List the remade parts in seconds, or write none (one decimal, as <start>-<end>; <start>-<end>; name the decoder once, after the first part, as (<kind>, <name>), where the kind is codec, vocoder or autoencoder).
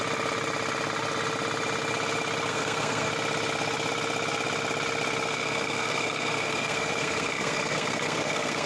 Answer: 2.5-3.1 (codec, SNAC); 5.3-8.7